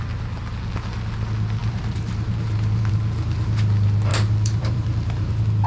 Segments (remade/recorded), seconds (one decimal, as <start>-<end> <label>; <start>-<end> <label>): 0.0-1.6 recorded; 1.6-2.9 remade; 2.9-4.1 recorded; 4.1-5.3 remade; 5.3-5.7 recorded